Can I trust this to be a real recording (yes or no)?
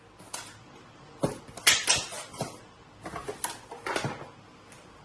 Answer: yes